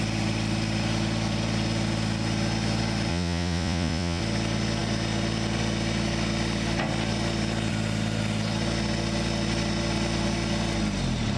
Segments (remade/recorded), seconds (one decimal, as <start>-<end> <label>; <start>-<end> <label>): 0.0-3.1 recorded; 3.1-4.2 remade; 4.2-11.4 recorded